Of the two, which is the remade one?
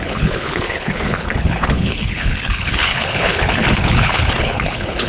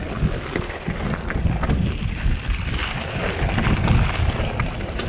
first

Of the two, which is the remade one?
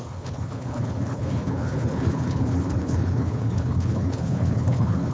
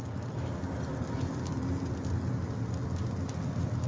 first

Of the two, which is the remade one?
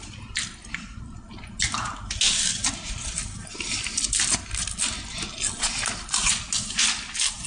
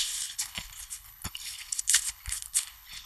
second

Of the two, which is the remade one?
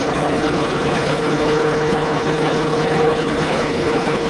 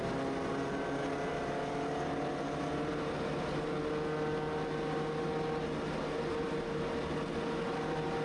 first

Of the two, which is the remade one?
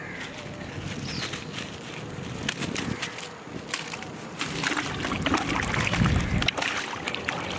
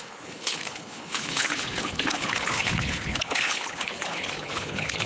second